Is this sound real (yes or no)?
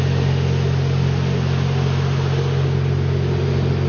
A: yes